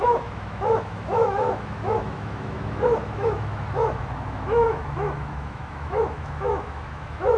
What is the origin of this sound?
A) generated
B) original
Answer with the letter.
A